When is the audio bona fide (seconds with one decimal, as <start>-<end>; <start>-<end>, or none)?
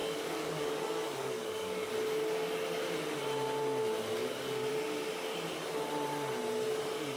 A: 1.9-4.2; 4.7-7.2